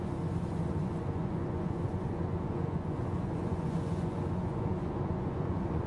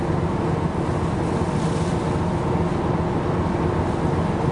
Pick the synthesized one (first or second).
first